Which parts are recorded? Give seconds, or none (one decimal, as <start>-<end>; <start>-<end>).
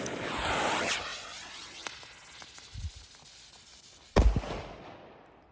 0.0-5.5